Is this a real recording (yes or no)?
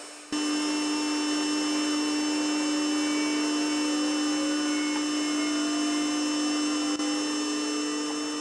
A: yes